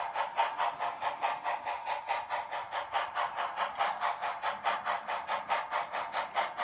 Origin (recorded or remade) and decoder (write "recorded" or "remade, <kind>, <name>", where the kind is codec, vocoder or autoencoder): recorded